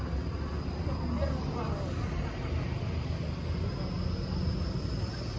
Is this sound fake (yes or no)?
no